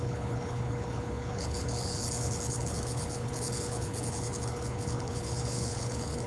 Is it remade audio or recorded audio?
remade